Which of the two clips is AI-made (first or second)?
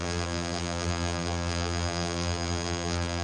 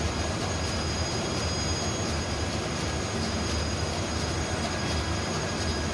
first